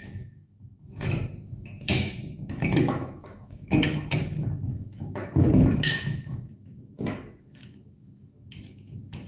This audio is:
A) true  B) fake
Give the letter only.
B